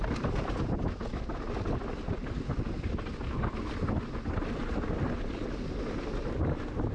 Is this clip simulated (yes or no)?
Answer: no